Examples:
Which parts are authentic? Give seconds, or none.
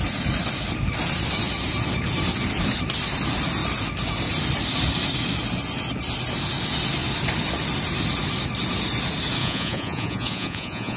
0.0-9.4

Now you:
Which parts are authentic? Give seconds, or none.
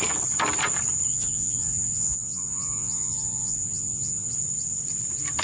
0.0-1.1; 4.3-5.4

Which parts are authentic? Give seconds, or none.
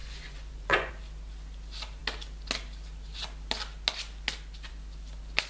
0.9-5.5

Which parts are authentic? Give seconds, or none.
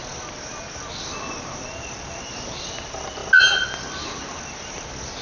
0.0-5.2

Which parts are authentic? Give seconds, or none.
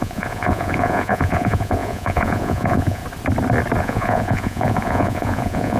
3.0-3.8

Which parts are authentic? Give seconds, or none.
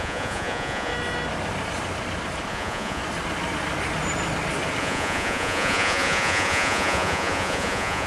0.9-2.5; 3.0-4.8